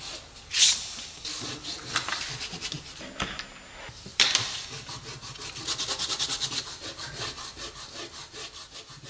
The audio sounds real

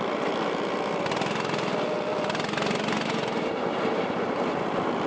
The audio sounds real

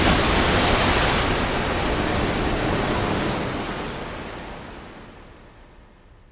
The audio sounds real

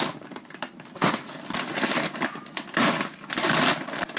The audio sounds real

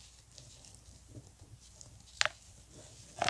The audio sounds real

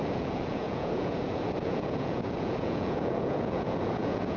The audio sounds fake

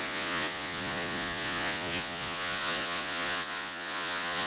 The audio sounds fake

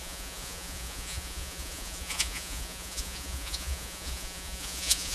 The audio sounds fake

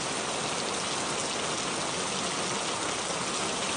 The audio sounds real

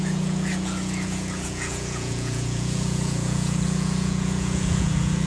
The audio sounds fake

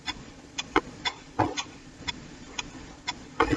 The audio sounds fake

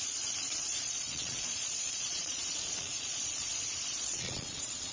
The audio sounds fake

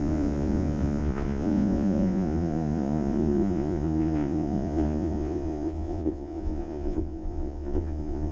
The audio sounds fake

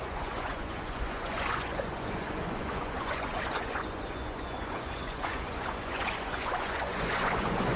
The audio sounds fake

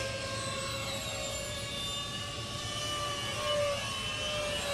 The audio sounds real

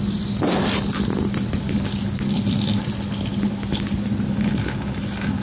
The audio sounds real